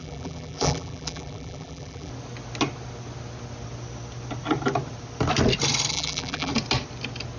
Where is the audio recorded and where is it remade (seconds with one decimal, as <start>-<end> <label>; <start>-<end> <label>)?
0.0-2.1 remade; 2.1-5.9 recorded; 5.9-6.5 remade; 6.5-7.4 recorded